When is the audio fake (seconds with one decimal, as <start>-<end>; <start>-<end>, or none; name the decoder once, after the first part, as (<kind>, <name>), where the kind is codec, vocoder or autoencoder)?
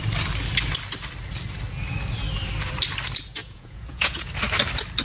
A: 3.4-4.3 (vocoder, Vocos)